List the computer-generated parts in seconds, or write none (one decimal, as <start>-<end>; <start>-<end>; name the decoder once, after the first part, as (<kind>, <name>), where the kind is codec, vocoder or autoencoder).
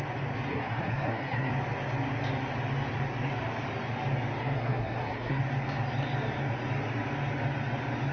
0.5-1.5 (codec, SNAC); 4.4-5.4